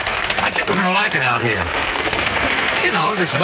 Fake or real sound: fake